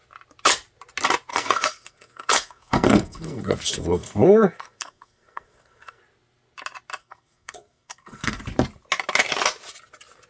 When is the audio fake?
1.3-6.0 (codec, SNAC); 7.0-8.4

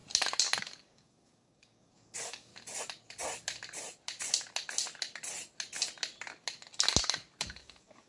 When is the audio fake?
0.6-2.5 (codec, DAC); 7.4-8.1

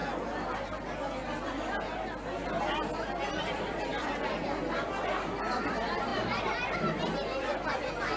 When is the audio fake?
3.3-8.2 (vocoder, BigVGAN v2)

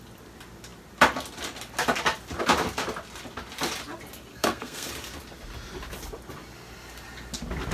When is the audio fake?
4.3-4.9 (codec, SNAC)